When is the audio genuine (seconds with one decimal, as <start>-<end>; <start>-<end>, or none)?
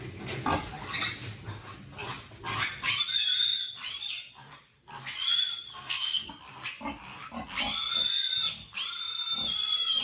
0.0-5.7; 6.3-10.0